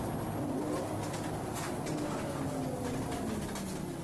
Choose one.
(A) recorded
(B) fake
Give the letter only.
A